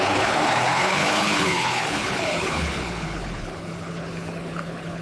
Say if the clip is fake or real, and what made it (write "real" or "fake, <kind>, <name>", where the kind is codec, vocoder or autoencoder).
fake, codec, HILCodec